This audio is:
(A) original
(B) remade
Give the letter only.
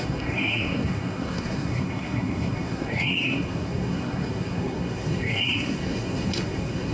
B